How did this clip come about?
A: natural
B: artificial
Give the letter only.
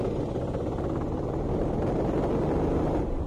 A